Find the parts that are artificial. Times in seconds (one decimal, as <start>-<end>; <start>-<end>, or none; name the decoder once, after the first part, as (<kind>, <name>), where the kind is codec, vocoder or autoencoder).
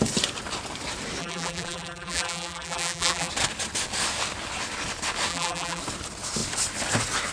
1.2-3.3 (vocoder, BigVGAN v2); 5.3-5.8